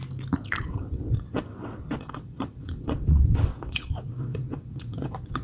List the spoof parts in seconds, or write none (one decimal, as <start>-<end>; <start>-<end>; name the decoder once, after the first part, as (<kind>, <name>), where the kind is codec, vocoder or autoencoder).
0.6-5.4 (vocoder, WaveNeXt)